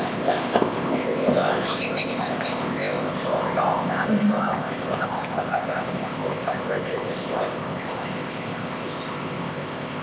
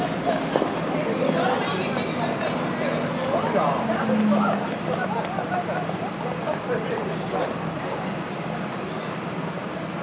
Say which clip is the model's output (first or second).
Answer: first